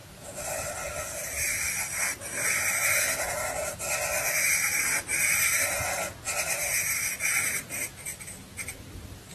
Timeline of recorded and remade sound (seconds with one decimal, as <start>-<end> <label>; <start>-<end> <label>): 0.0-4.6 recorded; 4.6-5.6 remade; 5.6-9.3 recorded